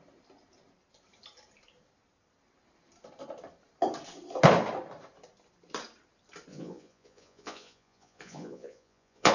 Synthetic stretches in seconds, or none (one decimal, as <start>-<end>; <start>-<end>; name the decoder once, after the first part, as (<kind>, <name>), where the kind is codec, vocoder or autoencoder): 6.5-9.3 (vocoder, Vocos)